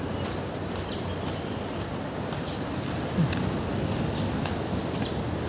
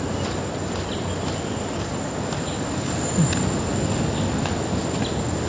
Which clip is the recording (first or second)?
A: second